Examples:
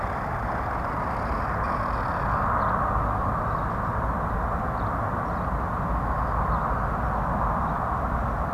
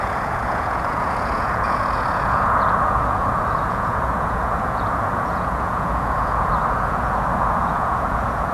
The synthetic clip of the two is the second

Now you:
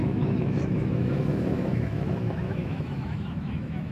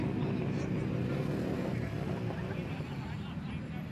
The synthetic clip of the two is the first